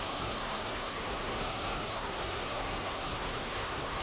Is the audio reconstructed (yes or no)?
yes